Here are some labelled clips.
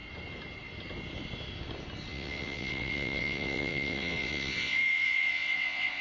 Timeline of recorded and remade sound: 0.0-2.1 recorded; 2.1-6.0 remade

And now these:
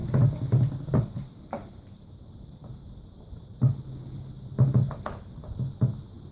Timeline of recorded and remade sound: 0.0-6.3 recorded

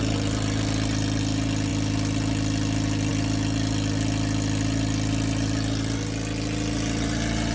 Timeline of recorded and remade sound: 0.0-7.5 recorded

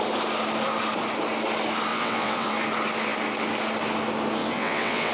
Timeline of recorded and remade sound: 0.0-1.9 recorded; 1.9-2.5 remade; 2.5-4.4 recorded; 4.4-5.1 remade